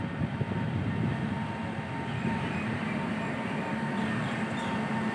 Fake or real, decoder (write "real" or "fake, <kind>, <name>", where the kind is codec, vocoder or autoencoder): real